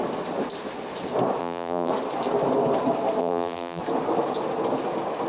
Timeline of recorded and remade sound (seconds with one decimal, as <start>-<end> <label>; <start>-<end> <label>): 0.0-1.4 recorded; 1.4-1.9 remade; 1.9-3.2 recorded; 3.2-3.8 remade; 3.8-5.3 recorded

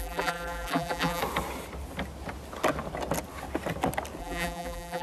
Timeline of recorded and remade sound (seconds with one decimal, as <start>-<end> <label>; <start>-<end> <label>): 0.0-1.2 remade; 1.2-4.2 recorded; 4.2-5.0 remade

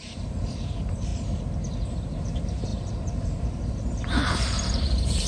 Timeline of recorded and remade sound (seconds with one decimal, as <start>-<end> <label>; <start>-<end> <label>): 0.0-1.1 remade; 1.1-1.9 recorded; 1.9-5.3 remade

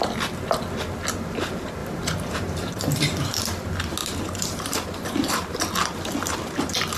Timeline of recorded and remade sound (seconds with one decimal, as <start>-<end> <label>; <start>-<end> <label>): 0.0-1.8 recorded; 1.8-2.9 remade; 2.9-4.0 recorded; 4.0-5.6 remade; 5.6-7.0 recorded

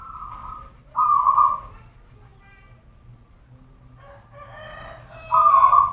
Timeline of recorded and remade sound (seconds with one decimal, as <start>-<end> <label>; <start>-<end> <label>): 0.0-0.4 recorded; 0.4-1.1 remade; 1.1-5.9 recorded